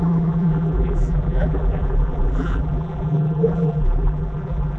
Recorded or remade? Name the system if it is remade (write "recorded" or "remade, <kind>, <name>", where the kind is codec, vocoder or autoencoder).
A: remade, vocoder, BigVGAN v2